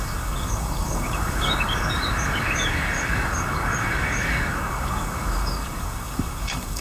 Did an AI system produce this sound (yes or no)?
yes